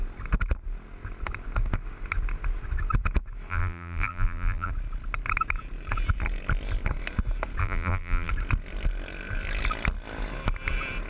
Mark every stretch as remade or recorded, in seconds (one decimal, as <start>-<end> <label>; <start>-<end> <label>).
0.0-3.5 recorded; 3.5-4.7 remade; 4.7-7.6 recorded; 7.6-8.3 remade; 8.3-11.1 recorded